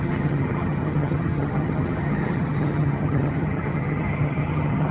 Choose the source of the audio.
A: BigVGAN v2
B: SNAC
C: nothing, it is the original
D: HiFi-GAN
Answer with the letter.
D